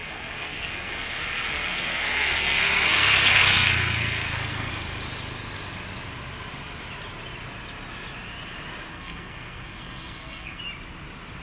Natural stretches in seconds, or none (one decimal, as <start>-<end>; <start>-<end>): 4.7-8.9; 10.6-11.4